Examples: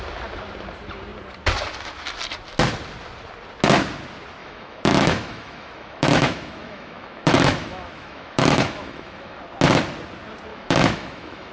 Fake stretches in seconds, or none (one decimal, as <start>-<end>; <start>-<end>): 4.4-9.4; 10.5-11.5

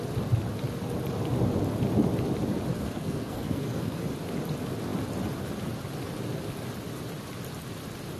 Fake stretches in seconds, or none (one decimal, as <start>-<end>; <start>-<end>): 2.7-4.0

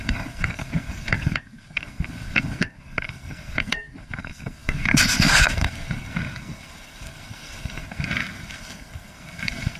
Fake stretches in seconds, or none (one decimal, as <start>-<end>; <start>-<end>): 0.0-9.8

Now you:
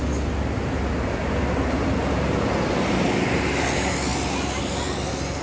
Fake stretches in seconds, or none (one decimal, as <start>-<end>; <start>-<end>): none

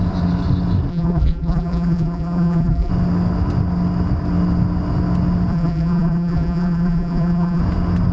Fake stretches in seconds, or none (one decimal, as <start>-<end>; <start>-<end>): 0.9-2.9; 5.5-7.6